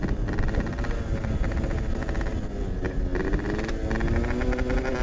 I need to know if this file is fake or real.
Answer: real